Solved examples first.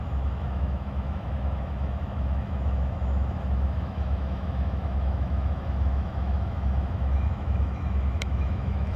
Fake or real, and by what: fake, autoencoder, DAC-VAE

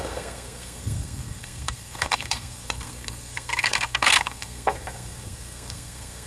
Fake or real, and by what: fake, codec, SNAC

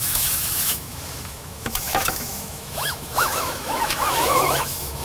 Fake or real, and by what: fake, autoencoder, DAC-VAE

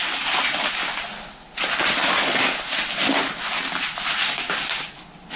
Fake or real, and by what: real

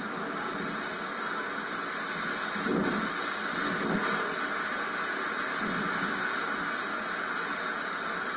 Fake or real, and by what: real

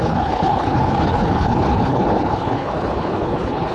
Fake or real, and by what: fake, codec, HILCodec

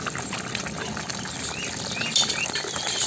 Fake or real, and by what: real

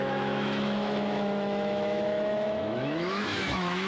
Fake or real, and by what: fake, autoencoder, DAC-VAE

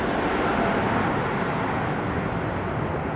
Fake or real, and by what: real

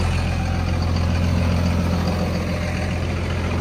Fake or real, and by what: real